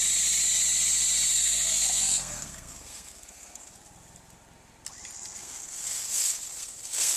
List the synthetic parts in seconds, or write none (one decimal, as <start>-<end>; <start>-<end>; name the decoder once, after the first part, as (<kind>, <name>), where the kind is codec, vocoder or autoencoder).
1.3-3.7 (codec, SNAC); 5.4-7.2